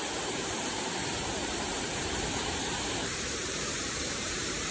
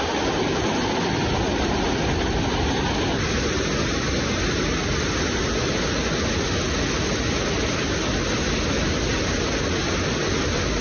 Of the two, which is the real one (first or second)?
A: second